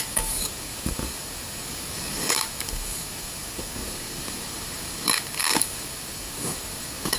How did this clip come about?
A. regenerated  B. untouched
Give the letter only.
A